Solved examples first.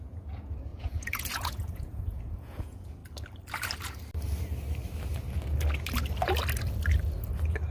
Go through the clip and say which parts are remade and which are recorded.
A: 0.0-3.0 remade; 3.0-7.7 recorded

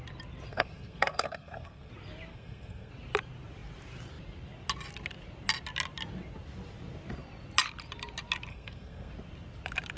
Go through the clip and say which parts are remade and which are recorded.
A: 0.0-0.5 recorded; 0.5-1.9 remade; 1.9-2.3 recorded; 2.3-2.9 remade; 2.9-8.5 recorded; 8.5-9.1 remade; 9.1-10.0 recorded

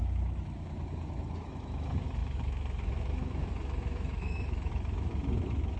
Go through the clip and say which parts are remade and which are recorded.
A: 0.0-5.8 remade

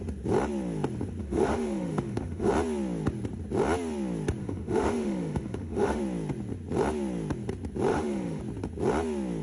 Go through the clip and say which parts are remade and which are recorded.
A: 0.0-1.2 recorded; 1.2-2.5 remade; 2.5-4.4 recorded; 4.4-6.0 remade; 6.0-7.9 recorded; 7.9-8.4 remade; 8.4-9.4 recorded

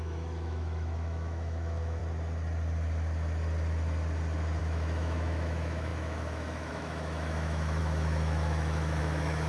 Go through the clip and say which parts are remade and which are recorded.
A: 0.0-2.0 remade; 2.0-4.6 recorded; 4.6-9.5 remade

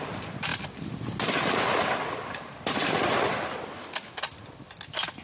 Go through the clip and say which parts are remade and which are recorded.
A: 0.0-5.2 recorded

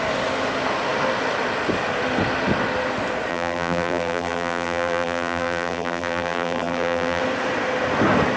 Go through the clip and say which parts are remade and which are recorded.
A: 0.0-3.3 recorded; 3.3-7.2 remade; 7.2-8.4 recorded

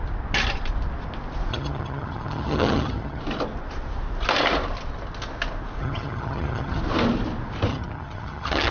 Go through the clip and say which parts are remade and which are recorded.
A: 0.0-1.5 recorded; 1.5-3.2 remade; 3.2-5.8 recorded; 5.8-6.8 remade; 6.8-7.7 recorded; 7.7-8.7 remade